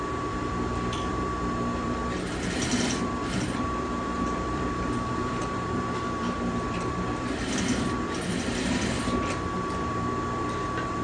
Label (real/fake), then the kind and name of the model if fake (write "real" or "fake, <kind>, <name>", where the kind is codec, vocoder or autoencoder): fake, vocoder, BigVGAN v2